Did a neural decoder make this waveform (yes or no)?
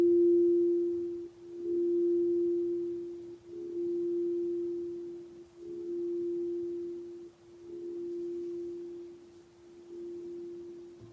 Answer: no